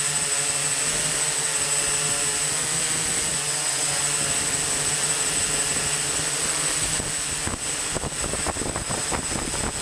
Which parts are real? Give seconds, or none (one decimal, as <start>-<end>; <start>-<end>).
0.0-3.3; 4.0-9.8

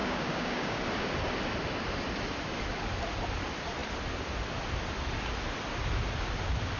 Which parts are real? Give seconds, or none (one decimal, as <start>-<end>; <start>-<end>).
0.8-6.8